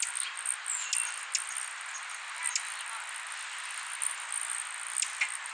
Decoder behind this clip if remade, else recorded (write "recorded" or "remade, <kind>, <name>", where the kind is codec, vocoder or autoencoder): recorded